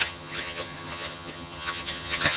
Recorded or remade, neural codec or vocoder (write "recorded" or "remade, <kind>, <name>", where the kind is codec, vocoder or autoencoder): remade, vocoder, HiFi-GAN